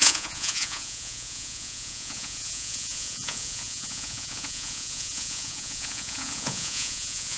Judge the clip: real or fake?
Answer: fake